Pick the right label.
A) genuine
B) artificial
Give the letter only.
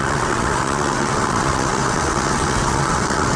B